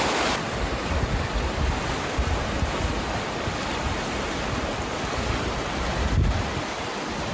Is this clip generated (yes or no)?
no